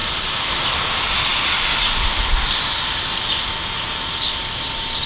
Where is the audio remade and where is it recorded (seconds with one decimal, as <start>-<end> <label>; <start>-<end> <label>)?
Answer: 0.0-0.8 remade; 0.8-5.1 recorded